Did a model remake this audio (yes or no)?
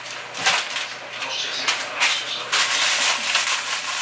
no